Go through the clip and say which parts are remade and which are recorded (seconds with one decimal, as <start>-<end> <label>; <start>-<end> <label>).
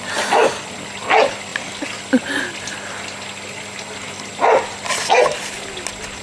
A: 0.0-6.2 recorded